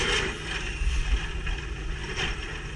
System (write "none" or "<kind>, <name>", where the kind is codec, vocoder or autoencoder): none